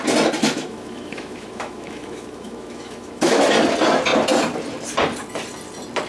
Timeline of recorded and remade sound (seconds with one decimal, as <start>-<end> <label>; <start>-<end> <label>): 0.0-0.4 recorded; 0.4-3.4 remade; 3.4-6.1 recorded